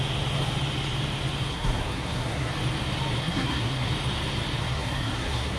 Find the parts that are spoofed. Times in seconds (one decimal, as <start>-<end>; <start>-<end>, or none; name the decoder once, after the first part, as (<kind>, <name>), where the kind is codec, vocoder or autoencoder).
1.5-2.5 (codec, SNAC); 3.2-3.9; 4.6-5.6